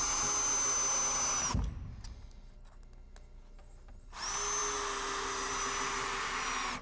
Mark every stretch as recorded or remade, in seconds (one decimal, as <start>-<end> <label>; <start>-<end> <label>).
0.0-6.8 recorded